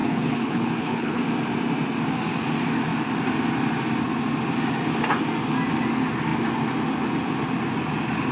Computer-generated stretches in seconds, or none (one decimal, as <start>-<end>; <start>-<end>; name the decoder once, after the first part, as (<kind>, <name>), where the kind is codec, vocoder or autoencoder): 0.0-1.2 (codec, HILCodec)